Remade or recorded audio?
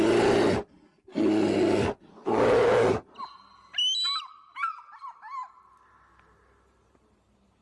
recorded